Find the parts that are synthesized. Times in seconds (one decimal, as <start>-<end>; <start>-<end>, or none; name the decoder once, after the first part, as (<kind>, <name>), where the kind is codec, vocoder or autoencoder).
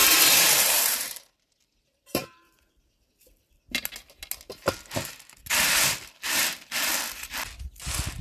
0.0-3.1 (vocoder, BigVGAN v2)